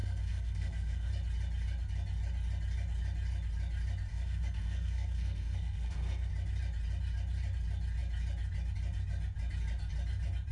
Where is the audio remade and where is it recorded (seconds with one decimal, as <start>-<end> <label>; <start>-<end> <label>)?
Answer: 0.0-1.1 remade; 1.1-4.1 recorded; 4.1-6.3 remade; 6.3-10.5 recorded

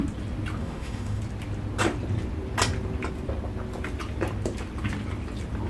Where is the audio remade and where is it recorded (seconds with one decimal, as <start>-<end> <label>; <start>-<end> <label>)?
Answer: 0.0-0.6 recorded; 0.6-1.2 remade; 1.2-5.7 recorded